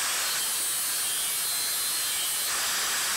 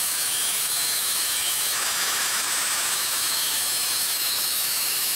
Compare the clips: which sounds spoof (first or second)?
second